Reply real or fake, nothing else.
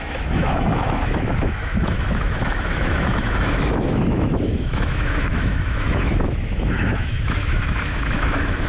fake